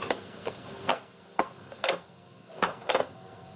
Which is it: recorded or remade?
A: remade